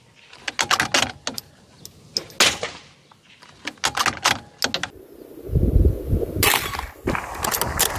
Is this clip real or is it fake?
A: real